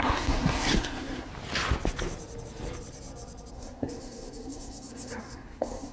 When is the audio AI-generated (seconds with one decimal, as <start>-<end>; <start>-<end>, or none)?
0.0-1.3; 3.5-5.9